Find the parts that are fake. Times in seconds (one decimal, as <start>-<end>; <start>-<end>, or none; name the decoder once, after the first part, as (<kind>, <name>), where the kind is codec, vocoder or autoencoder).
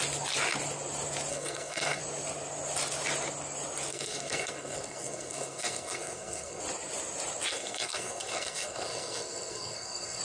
1.3-2.0 (codec, SNAC); 3.9-6.6; 7.5-10.2